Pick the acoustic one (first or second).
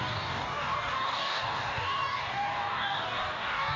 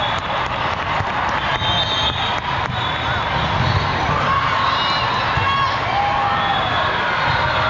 second